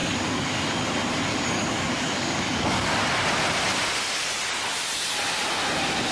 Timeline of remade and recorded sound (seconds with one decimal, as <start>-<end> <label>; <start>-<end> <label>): 0.0-0.6 remade; 0.6-1.3 recorded; 1.3-3.0 remade; 3.0-6.1 recorded